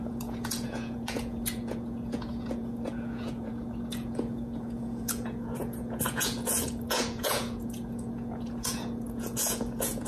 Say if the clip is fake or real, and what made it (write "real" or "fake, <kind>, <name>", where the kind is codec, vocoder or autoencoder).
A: fake, vocoder, Vocos